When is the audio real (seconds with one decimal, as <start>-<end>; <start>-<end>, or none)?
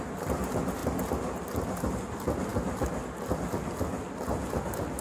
0.0-5.0